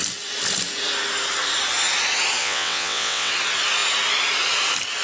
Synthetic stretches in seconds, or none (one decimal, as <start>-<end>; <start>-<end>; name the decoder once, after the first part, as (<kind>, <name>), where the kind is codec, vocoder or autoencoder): 2.4-3.3 (vocoder, WaveNeXt)